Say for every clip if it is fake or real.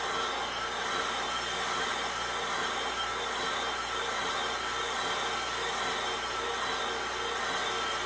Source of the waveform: real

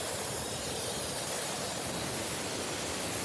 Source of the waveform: real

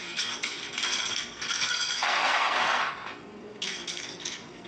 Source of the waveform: fake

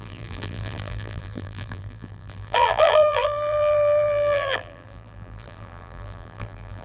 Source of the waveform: fake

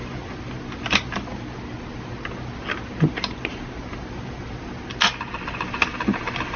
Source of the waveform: real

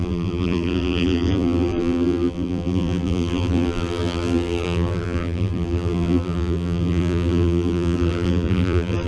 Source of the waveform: fake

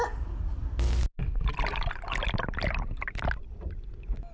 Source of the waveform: real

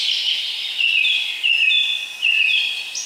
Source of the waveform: real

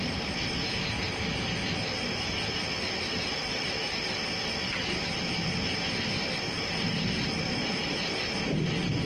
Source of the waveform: real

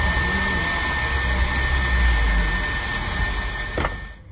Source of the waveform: real